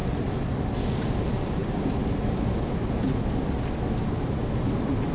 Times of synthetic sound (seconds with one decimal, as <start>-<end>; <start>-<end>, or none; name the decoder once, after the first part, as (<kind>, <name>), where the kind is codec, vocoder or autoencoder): 1.1-1.6 (vocoder, BigVGAN v2); 4.1-5.1